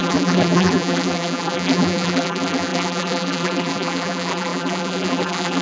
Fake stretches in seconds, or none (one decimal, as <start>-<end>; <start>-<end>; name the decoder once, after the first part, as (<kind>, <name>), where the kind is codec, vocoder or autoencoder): 0.0-5.6 (vocoder, BigVGAN v2)